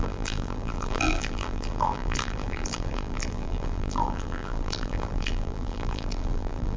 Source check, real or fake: fake